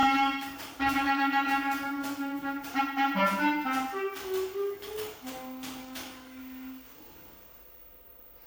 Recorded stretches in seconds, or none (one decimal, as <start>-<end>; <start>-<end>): 2.8-3.9; 5.3-5.8; 6.4-8.5